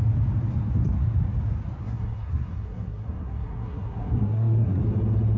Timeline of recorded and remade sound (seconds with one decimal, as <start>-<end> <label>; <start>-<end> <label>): 0.0-1.8 recorded; 1.8-4.8 remade; 4.8-5.4 recorded